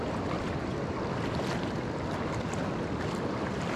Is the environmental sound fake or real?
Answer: real